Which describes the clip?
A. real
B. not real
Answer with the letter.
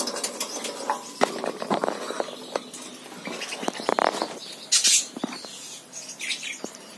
A